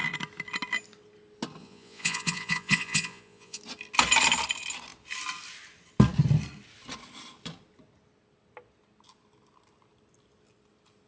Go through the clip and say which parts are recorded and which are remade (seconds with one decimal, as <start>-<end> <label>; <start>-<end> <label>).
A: 0.0-1.6 recorded; 1.6-3.6 remade; 3.6-11.1 recorded